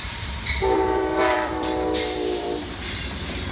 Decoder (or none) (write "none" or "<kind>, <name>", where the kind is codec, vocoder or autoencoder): vocoder, BigVGAN v2